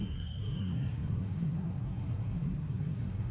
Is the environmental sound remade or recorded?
remade